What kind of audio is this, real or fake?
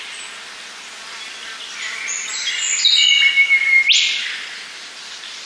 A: real